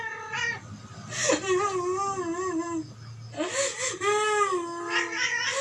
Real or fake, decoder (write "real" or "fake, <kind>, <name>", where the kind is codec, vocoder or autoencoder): real